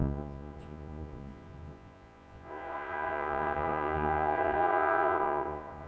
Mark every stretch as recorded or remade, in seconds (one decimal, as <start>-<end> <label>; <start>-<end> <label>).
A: 0.0-5.9 remade